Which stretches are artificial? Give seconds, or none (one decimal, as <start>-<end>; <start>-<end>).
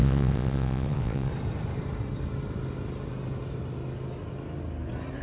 0.0-1.3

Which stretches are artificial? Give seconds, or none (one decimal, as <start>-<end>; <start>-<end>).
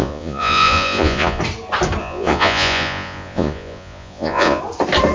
0.0-1.4; 2.0-4.6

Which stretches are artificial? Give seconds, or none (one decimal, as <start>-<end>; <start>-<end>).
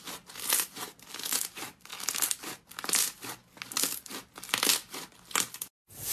none